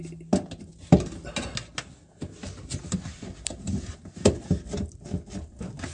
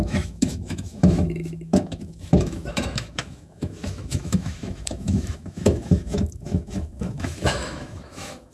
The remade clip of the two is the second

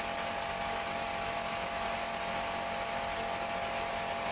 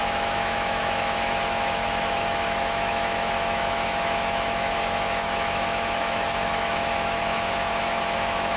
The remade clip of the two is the second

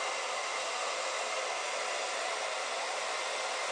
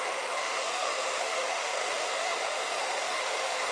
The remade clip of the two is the second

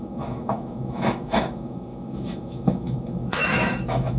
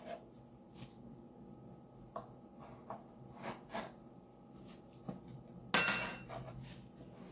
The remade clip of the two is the first